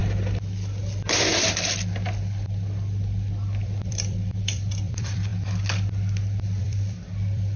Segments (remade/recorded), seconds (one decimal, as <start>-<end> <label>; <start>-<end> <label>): 0.0-0.8 recorded; 0.8-1.3 remade; 1.3-3.6 recorded; 3.6-5.3 remade; 5.3-6.6 recorded; 6.6-7.6 remade